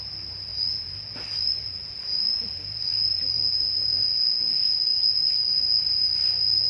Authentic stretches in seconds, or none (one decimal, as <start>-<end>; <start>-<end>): 0.0-6.7